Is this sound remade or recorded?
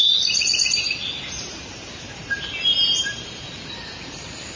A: remade